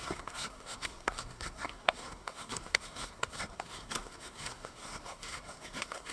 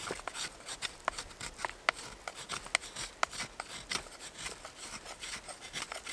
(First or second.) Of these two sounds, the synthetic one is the first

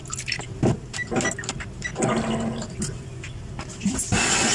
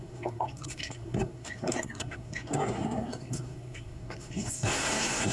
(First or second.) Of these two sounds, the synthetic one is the second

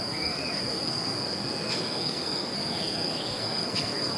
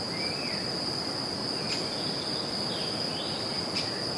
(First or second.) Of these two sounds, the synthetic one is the first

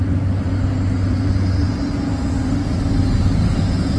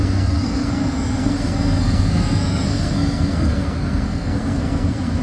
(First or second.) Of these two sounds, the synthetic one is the second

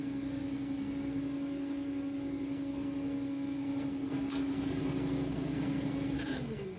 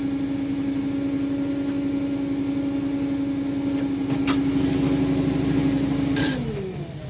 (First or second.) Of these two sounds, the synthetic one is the first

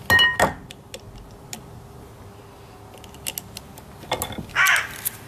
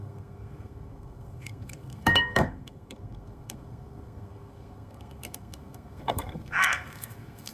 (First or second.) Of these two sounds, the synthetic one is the second